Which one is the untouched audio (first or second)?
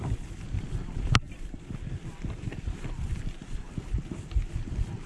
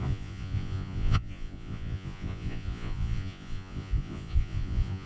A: first